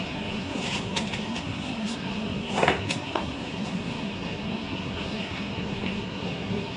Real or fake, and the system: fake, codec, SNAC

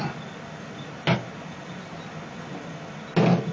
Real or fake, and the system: real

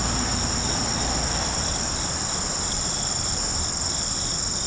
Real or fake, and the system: fake, vocoder, BigVGAN v2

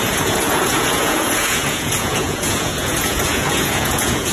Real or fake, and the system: fake, vocoder, Vocos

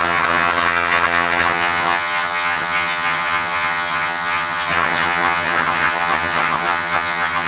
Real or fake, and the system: fake, vocoder, HiFi-GAN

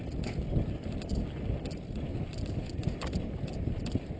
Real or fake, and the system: real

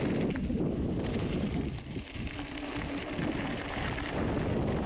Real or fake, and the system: real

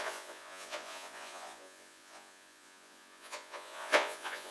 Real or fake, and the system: fake, vocoder, Vocos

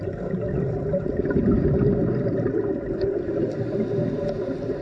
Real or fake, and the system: real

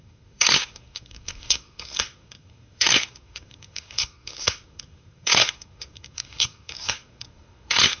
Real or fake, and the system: fake, codec, SNAC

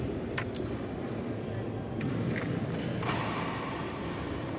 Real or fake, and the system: real